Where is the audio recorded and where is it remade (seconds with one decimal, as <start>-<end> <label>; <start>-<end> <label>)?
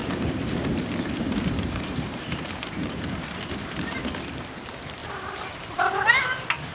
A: 0.0-4.0 remade; 4.0-5.0 recorded; 5.0-5.8 remade; 5.8-6.7 recorded